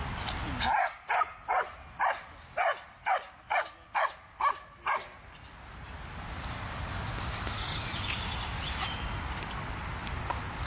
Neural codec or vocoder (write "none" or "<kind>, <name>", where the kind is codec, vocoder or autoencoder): none